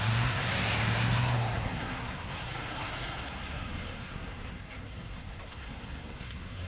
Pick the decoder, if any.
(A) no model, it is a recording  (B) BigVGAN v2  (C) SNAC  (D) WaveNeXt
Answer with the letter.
C